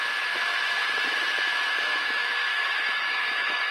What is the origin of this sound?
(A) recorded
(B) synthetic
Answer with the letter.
B